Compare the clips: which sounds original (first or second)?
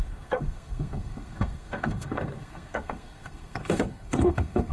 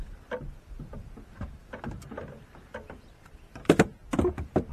second